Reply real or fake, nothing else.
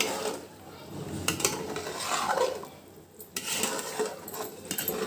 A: real